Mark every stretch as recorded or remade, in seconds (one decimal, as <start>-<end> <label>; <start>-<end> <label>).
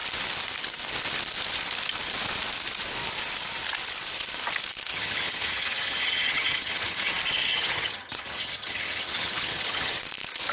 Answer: 0.0-4.9 recorded; 4.9-7.1 remade; 7.1-7.5 recorded; 7.5-10.0 remade; 10.0-10.5 recorded